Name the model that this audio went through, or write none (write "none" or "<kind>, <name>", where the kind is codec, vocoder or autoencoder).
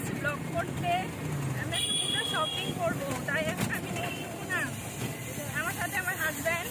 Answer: none